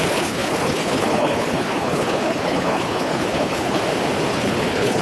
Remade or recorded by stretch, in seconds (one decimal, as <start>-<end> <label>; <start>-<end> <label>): 0.0-3.8 remade; 3.8-4.3 recorded; 4.3-5.0 remade